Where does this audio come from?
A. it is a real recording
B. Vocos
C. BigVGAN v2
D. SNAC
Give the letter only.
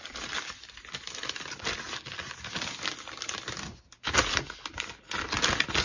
A